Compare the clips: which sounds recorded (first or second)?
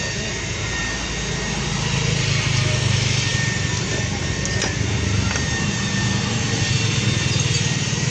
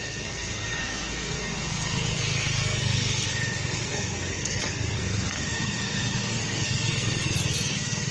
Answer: first